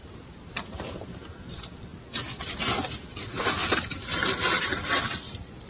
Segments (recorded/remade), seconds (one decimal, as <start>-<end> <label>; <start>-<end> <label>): 0.0-0.6 recorded; 0.6-1.9 remade; 1.9-2.6 recorded; 2.6-3.6 remade; 3.6-4.6 recorded; 4.6-5.7 remade